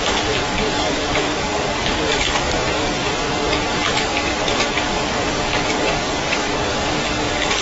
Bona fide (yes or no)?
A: no